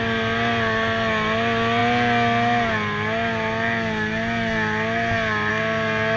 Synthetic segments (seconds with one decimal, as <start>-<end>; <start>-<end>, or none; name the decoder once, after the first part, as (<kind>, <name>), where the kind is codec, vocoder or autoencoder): none